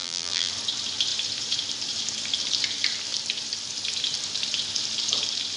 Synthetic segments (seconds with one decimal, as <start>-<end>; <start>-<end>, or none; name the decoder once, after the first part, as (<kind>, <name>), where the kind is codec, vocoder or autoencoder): 0.0-0.5 (vocoder, BigVGAN v2)

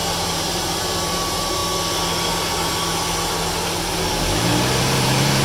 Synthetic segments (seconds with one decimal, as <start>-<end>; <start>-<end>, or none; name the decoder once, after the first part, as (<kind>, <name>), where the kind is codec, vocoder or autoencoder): 0.0-1.6 (vocoder, BigVGAN v2); 4.8-5.4

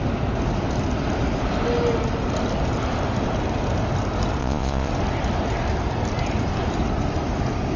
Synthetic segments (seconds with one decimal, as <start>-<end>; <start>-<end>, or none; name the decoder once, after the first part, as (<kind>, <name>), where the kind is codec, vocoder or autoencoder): 4.4-4.9 (vocoder, Vocos)

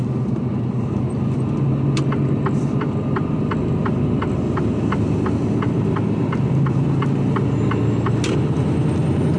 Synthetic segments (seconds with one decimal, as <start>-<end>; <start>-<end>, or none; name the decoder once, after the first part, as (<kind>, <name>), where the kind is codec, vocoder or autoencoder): none

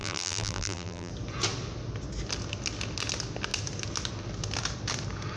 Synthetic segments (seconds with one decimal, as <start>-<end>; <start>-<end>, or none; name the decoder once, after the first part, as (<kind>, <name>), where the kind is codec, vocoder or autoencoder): 0.0-1.1 (vocoder, BigVGAN v2)

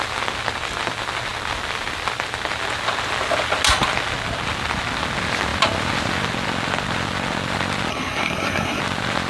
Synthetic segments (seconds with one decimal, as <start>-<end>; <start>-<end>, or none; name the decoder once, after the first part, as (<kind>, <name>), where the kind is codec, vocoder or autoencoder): 7.9-8.8 (codec, SNAC)

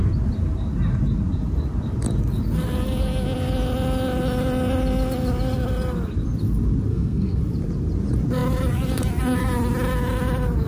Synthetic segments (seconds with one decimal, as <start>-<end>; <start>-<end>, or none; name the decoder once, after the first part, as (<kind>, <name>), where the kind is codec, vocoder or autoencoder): 6.9-7.4 (codec, SNAC)

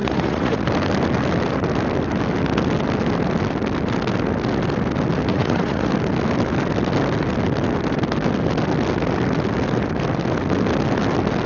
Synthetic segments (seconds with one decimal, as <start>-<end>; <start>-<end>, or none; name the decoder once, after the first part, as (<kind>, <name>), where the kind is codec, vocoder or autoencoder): 0.0-0.6 (vocoder, Vocos); 5.3-5.9